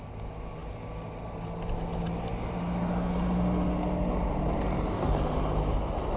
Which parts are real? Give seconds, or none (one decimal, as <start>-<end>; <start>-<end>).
0.0-6.2